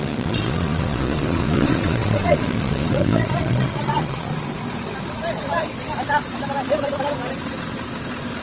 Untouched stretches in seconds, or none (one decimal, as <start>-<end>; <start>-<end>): 4.3-8.4